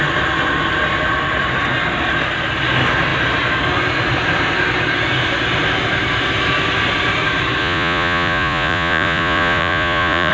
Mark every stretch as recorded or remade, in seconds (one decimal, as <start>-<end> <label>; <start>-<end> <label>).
0.0-7.6 recorded; 7.6-10.3 remade